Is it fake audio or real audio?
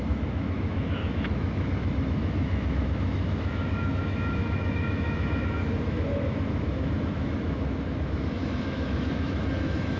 fake